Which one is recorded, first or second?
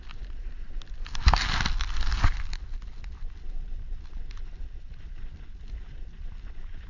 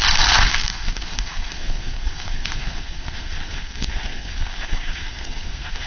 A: first